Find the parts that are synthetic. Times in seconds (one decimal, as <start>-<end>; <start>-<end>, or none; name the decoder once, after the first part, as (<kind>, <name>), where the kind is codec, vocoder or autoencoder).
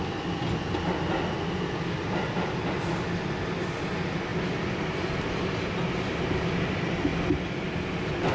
none